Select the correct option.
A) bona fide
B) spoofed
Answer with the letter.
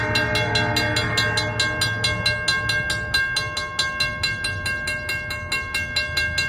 A